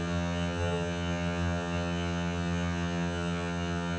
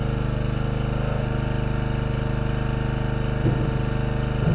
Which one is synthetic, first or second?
first